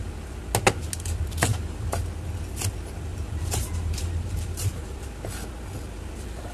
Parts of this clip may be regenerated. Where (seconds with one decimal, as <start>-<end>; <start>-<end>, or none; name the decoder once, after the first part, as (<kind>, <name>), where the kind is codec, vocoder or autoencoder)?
1.5-2.0 (vocoder, BigVGAN v2); 3.1-5.0